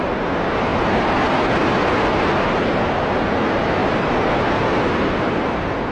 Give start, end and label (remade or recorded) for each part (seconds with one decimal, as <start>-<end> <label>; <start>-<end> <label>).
0.0-3.8 recorded; 3.8-4.3 remade; 4.3-5.9 recorded